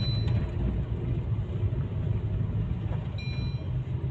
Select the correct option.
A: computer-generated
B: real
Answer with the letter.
B